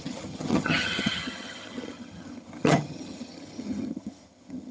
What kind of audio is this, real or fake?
fake